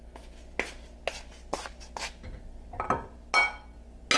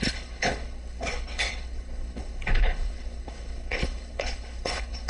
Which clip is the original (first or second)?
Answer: first